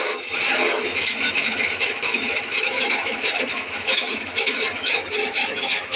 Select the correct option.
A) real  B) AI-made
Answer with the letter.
B